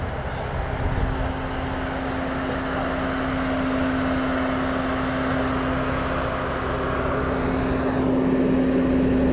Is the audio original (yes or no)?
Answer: yes